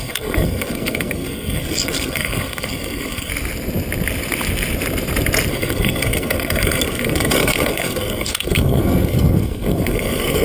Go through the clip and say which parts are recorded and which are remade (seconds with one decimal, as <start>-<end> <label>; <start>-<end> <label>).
0.0-3.3 remade; 3.3-5.5 recorded; 5.5-10.4 remade